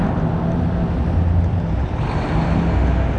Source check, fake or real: real